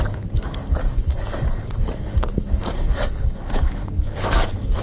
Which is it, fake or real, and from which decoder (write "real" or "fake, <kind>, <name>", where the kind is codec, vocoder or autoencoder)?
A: fake, codec, DAC